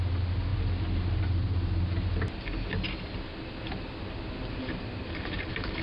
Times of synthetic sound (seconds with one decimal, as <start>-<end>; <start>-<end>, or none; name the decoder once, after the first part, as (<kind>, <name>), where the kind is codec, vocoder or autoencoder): none